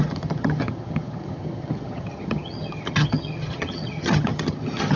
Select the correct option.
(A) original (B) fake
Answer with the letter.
B